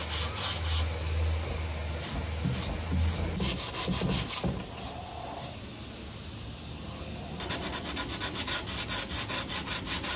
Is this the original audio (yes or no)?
yes